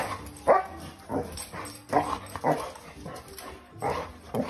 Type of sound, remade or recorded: recorded